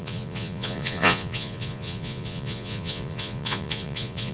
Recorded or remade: remade